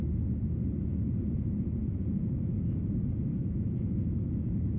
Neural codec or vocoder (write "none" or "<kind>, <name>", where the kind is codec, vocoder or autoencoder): vocoder, Vocos